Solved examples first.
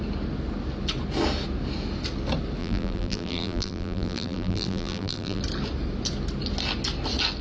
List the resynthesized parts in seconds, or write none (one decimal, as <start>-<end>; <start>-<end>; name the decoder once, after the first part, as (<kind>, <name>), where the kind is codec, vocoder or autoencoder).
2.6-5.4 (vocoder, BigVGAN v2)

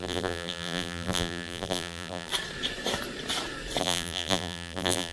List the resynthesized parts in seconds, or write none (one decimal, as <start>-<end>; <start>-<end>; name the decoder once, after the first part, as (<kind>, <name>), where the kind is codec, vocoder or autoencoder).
0.0-2.3 (vocoder, BigVGAN v2); 3.8-5.1

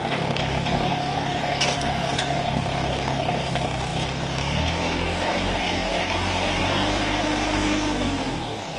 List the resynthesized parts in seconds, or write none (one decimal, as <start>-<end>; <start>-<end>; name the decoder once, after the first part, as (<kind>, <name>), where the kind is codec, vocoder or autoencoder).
0.0-8.8 (codec, DAC)

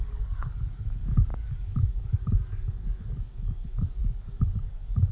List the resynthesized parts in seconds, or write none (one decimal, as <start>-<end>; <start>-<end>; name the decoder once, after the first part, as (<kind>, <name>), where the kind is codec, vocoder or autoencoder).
0.0-5.1 (codec, DAC)

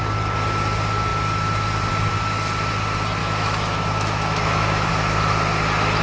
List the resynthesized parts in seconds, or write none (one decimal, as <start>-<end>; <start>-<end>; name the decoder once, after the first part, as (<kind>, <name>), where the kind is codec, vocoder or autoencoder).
3.2-4.9 (autoencoder, DAC-VAE)